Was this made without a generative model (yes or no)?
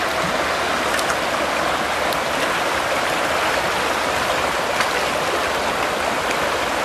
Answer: yes